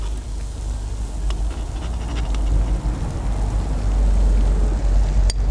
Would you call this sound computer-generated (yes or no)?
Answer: no